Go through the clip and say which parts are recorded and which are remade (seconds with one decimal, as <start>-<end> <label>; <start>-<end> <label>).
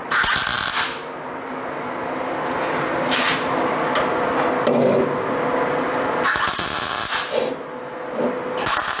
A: 0.0-9.0 recorded